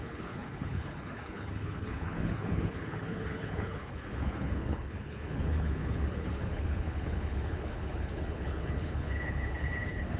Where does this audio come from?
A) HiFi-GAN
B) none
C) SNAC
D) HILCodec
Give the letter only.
D